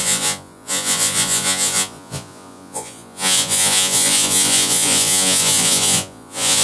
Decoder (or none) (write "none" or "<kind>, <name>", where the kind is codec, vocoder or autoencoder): vocoder, Vocos